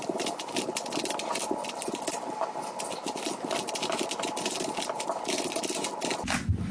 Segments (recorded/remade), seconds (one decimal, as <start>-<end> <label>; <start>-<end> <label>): 0.0-6.7 recorded